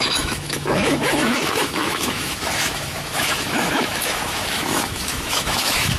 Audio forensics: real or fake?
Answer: fake